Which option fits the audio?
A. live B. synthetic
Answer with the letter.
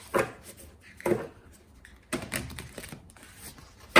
A